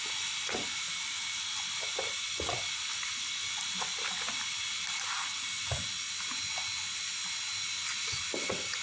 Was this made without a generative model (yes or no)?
yes